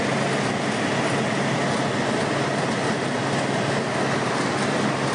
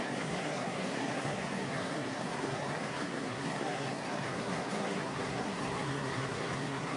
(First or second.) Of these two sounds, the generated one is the second